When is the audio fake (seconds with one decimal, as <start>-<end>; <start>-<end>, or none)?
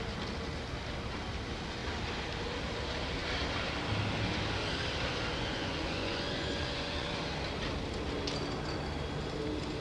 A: 5.3-7.2